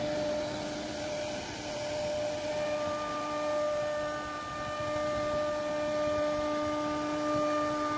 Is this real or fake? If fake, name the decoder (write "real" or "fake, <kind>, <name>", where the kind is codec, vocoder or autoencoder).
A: real